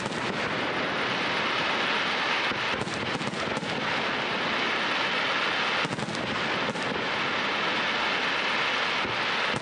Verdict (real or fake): real